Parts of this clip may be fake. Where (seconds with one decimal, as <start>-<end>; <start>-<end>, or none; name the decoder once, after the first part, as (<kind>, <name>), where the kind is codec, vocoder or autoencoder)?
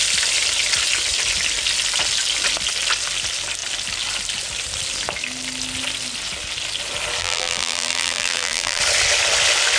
7.2-8.8 (vocoder, BigVGAN v2)